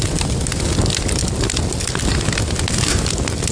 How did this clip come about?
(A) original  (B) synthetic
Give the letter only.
A